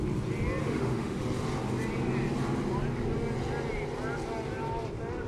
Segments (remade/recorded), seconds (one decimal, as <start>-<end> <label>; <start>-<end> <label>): 0.0-0.6 recorded; 0.6-1.2 remade; 1.2-5.3 recorded